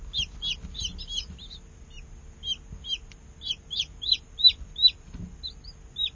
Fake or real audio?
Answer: real